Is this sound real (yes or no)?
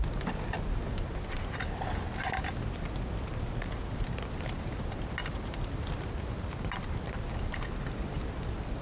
yes